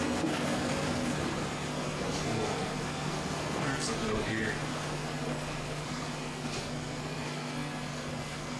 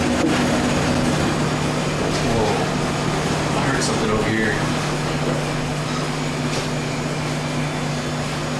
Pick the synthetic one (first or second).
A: first